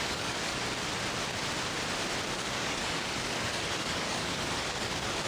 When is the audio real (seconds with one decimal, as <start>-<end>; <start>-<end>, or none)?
0.5-2.3